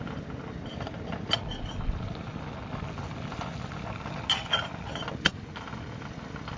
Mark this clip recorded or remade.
recorded